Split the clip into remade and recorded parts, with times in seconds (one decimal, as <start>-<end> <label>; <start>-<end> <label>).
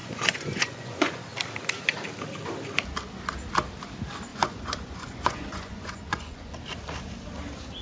0.0-1.2 remade; 1.2-4.3 recorded; 4.3-6.6 remade; 6.6-7.8 recorded